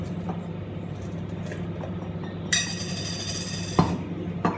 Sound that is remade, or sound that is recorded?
recorded